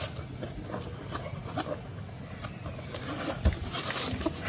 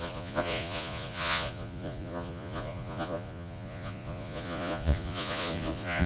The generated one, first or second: second